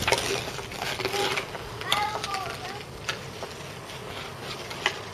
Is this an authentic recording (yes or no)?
yes